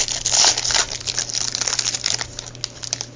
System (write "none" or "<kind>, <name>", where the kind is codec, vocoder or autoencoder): none